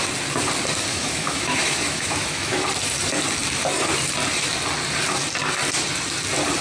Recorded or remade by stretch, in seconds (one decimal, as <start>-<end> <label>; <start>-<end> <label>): 0.0-0.9 recorded; 0.9-2.7 remade; 2.7-6.6 recorded